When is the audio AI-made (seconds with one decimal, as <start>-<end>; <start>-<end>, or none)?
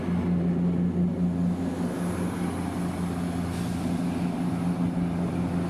none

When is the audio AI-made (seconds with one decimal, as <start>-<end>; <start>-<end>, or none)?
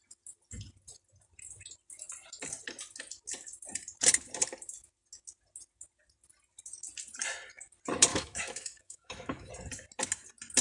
8.1-9.5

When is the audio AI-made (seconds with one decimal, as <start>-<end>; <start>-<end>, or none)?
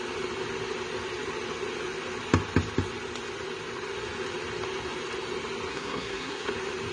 5.7-6.5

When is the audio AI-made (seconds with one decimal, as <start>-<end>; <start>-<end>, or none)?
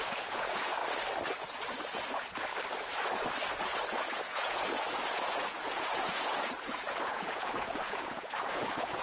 0.0-0.8; 1.4-2.5; 3.6-9.0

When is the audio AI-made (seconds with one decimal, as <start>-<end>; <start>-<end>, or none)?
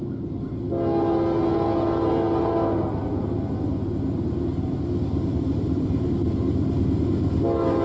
5.3-6.5